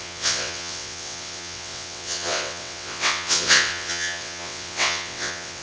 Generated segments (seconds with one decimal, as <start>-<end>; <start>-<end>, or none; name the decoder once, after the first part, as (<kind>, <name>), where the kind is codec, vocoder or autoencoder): 0.0-5.6 (vocoder, WaveNeXt)